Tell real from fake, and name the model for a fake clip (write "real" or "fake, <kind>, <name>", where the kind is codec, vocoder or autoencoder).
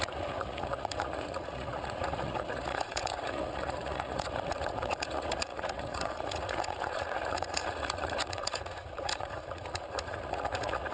fake, vocoder, Vocos